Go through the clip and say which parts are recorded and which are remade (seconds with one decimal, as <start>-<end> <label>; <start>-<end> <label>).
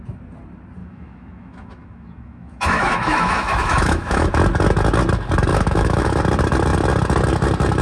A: 0.0-0.8 recorded; 0.8-4.3 remade; 4.3-5.5 recorded; 5.5-6.2 remade; 6.2-7.8 recorded